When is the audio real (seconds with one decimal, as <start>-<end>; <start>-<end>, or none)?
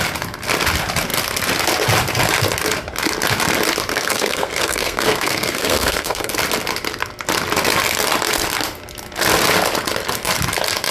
0.0-3.9; 6.3-10.9